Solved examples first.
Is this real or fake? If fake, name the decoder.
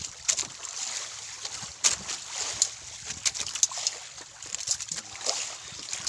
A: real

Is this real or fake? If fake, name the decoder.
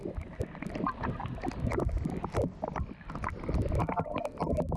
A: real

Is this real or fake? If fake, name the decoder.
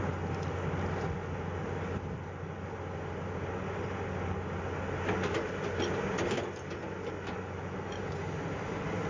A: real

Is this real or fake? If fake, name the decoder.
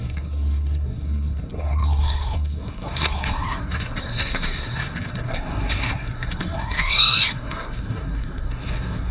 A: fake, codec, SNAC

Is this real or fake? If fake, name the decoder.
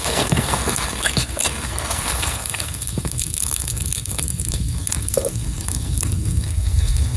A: fake, codec, SNAC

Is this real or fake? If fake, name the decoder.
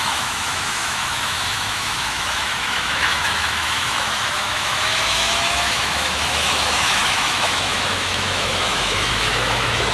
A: fake, autoencoder, DAC-VAE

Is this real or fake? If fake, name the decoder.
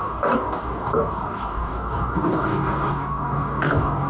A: fake, codec, DAC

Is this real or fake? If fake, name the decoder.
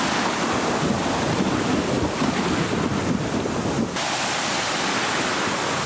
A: real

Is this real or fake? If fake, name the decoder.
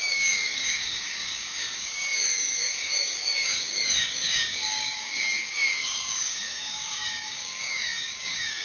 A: fake, codec, DAC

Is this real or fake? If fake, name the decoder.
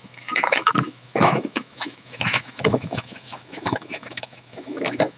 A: fake, autoencoder, DAC-VAE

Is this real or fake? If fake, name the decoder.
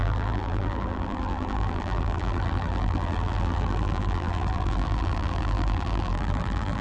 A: fake, vocoder, BigVGAN v2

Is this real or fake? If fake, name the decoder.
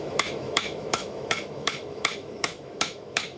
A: fake, autoencoder, DAC-VAE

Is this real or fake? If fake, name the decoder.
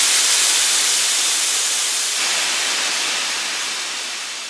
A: real